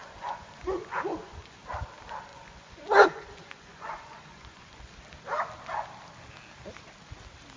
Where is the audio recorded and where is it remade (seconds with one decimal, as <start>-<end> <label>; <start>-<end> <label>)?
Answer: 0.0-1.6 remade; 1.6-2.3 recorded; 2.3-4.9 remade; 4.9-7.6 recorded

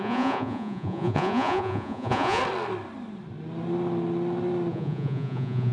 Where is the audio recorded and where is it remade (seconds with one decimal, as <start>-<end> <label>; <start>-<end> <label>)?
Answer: 0.0-2.4 remade; 2.4-4.7 recorded; 4.7-5.7 remade

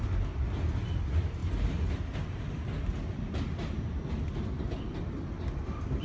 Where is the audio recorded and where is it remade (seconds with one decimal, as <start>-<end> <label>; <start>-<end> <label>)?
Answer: 0.0-6.0 recorded